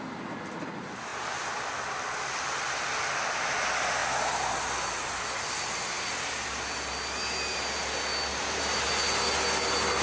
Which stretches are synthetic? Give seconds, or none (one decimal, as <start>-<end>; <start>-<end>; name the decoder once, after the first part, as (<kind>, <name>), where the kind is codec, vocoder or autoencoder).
8.3-8.9 (vocoder, BigVGAN v2)